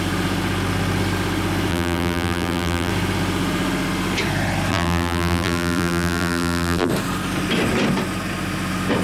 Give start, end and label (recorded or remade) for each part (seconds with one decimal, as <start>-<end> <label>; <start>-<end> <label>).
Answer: 0.0-1.7 recorded; 1.7-2.9 remade; 2.9-4.7 recorded; 4.7-6.9 remade; 6.9-9.0 recorded